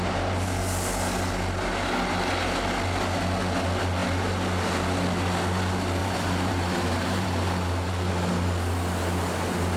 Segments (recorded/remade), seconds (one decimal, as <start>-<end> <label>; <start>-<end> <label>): 0.0-6.0 recorded; 6.0-8.1 remade; 8.1-9.8 recorded